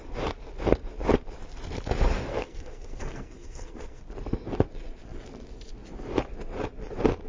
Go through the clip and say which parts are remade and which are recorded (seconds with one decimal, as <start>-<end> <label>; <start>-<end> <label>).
0.0-2.3 recorded; 2.3-4.0 remade; 4.0-7.3 recorded